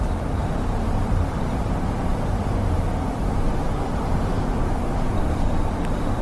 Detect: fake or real fake